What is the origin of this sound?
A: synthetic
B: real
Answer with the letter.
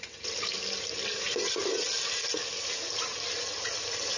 B